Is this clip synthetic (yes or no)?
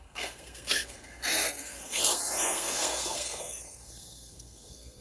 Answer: yes